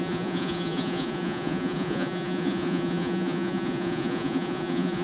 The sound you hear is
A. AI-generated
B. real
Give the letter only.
A